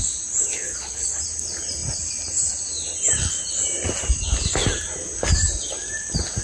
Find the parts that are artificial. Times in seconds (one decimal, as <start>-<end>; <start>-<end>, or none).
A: 0.5-1.2

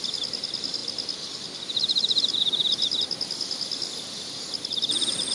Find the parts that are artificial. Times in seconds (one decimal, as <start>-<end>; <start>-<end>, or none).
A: none

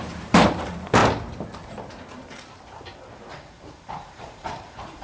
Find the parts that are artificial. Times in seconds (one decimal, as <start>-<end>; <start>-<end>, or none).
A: 0.0-1.0; 4.0-5.0

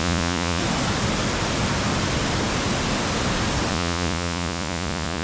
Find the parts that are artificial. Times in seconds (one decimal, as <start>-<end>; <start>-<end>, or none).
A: 0.0-0.6; 3.7-5.2

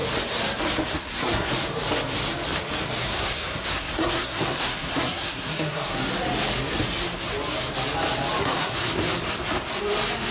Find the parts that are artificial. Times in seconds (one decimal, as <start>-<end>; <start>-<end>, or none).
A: 0.9-1.5; 3.0-6.0; 8.4-8.9

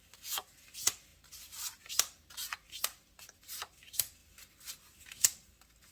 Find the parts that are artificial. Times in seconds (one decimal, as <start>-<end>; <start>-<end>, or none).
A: none

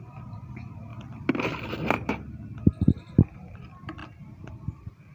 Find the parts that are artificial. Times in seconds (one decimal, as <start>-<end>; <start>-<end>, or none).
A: none